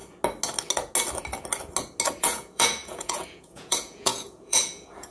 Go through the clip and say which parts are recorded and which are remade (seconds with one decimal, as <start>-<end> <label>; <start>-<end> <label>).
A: 0.0-2.2 recorded; 2.2-5.1 remade